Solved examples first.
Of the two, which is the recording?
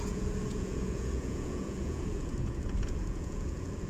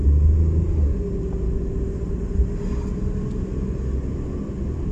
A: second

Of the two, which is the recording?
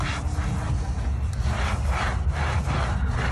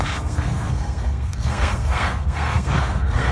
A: first